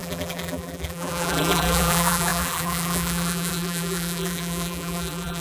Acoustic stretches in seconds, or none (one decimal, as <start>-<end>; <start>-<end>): none